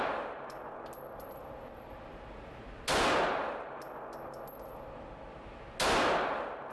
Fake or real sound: real